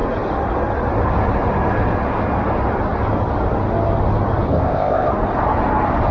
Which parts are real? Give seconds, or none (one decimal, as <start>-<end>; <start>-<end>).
0.0-4.5; 5.1-6.1

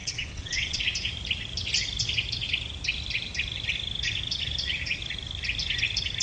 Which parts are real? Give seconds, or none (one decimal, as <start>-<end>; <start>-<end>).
0.8-6.2

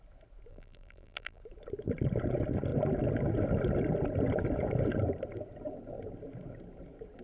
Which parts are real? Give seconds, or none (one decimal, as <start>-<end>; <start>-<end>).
0.0-0.5; 1.4-7.2

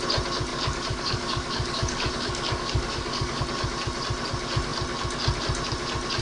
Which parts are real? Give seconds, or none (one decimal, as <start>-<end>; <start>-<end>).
0.0-0.5; 3.4-6.2

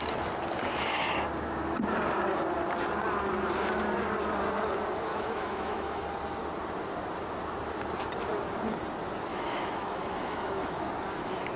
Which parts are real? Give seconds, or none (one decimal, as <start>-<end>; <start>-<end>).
0.0-5.1; 6.0-9.3; 10.9-11.6

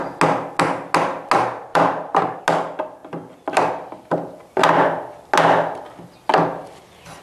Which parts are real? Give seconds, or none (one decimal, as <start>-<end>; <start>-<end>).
0.0-1.7; 2.4-7.2

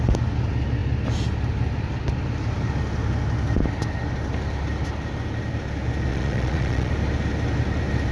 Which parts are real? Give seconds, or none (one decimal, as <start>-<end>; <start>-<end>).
0.0-6.1; 6.9-8.1